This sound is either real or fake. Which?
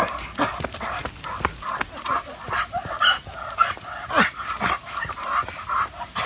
real